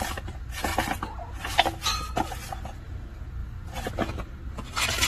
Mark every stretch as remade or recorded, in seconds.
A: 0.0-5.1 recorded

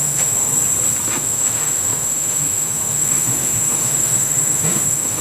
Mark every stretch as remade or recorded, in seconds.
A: 0.0-0.5 remade; 0.5-1.1 recorded; 1.1-5.2 remade